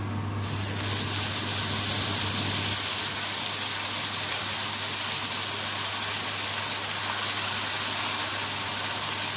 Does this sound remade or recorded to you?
recorded